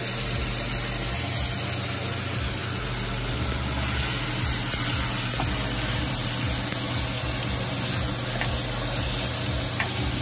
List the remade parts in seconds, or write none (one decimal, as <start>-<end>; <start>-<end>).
none